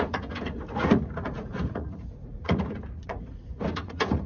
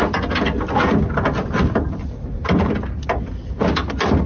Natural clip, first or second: second